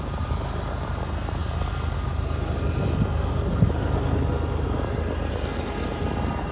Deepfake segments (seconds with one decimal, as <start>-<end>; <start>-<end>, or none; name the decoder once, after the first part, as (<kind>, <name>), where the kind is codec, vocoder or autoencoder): none